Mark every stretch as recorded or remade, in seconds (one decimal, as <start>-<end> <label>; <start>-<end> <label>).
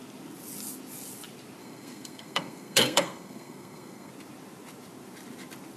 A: 0.0-1.6 recorded; 1.6-4.1 remade; 4.1-5.8 recorded